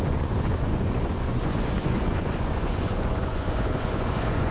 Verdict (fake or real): fake